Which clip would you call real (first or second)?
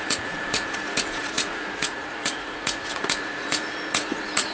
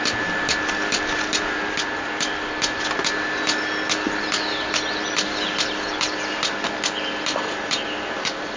second